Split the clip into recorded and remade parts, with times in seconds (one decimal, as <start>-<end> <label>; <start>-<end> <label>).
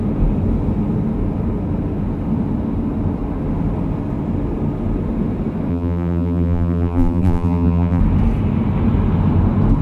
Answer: 0.0-5.7 recorded; 5.7-8.0 remade; 8.0-9.8 recorded